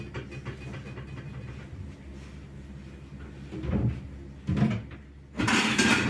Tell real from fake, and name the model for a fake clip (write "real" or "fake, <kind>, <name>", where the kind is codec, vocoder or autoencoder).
real